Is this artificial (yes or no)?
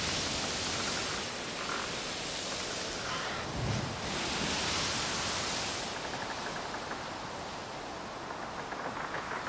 no